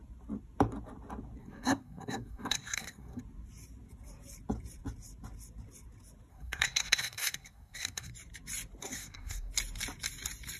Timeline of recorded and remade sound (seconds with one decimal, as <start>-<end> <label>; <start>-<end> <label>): 0.0-1.4 recorded; 1.4-3.2 remade; 3.2-6.3 recorded; 6.3-8.1 remade; 8.1-8.8 recorded; 8.8-9.5 remade; 9.5-10.6 recorded